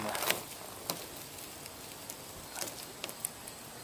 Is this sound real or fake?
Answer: real